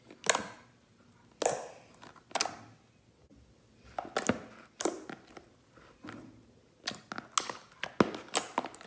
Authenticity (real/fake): real